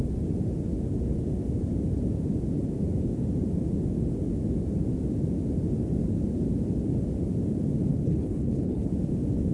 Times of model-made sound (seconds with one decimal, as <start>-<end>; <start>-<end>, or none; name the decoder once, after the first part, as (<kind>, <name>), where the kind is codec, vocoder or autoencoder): 7.9-8.9 (codec, HILCodec)